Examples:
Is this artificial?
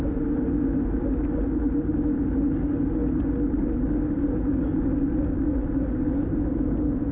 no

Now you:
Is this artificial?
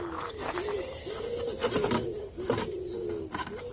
no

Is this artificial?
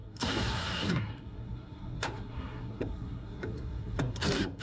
yes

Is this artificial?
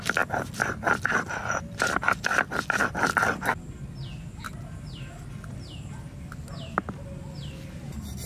no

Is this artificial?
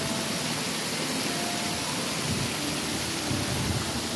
no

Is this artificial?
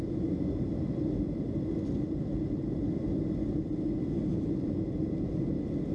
no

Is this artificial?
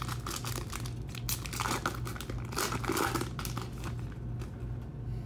no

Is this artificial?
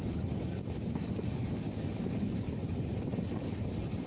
yes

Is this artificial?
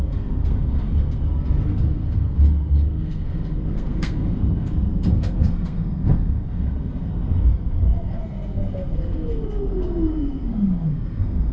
yes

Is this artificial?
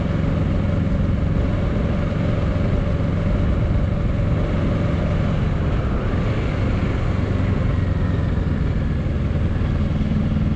no